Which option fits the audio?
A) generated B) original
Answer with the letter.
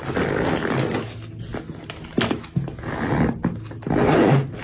B